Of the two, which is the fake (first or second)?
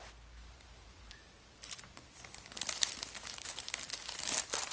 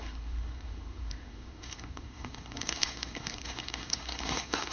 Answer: second